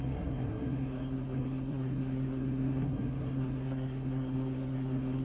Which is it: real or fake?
fake